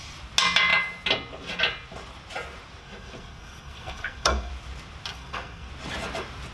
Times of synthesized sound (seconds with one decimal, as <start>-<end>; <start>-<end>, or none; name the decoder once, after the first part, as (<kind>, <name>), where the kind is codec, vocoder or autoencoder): 2.8-4.5 (codec, SNAC); 5.1-5.7